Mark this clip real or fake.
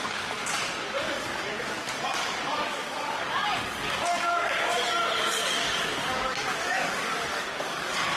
fake